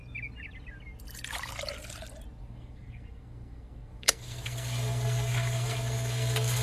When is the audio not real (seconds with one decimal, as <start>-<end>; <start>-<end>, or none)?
2.4-6.6